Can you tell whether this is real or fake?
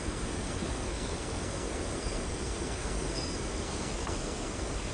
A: fake